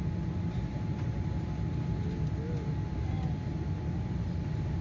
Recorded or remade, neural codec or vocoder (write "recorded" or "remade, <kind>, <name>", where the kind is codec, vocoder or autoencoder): recorded